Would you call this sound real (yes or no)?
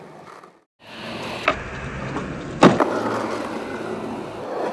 yes